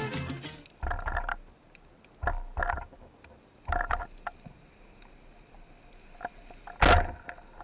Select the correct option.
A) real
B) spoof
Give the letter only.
A